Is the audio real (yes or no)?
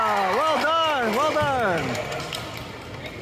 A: yes